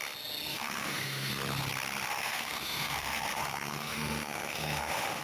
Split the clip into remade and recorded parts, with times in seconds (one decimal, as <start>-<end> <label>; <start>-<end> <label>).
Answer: 0.0-0.5 recorded; 0.5-1.3 remade; 1.3-2.1 recorded; 2.1-5.2 remade